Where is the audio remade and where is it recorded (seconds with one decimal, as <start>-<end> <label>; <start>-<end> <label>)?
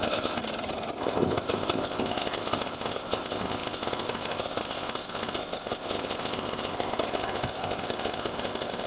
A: 0.0-0.4 remade; 0.4-1.0 recorded; 1.0-8.9 remade